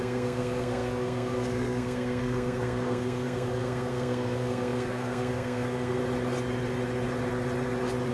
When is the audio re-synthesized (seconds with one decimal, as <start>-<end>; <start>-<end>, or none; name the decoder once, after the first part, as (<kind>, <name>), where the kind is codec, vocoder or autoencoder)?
0.0-6.0 (codec, SNAC)